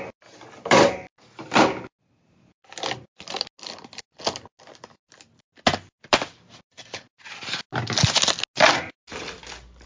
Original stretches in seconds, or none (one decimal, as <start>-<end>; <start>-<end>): 0.0-9.9